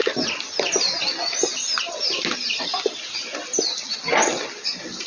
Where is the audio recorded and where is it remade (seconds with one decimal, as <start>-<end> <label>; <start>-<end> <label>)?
0.0-5.1 recorded